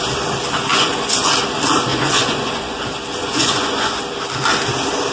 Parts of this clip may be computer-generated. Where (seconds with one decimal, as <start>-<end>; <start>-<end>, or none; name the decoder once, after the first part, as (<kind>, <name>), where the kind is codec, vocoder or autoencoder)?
0.7-1.3 (vocoder, Vocos); 1.9-2.8; 3.2-4.0